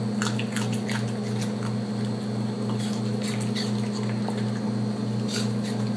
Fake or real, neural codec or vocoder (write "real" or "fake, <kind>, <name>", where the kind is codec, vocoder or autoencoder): real